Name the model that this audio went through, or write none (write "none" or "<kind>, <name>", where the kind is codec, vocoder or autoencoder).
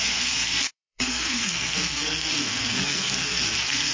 codec, SNAC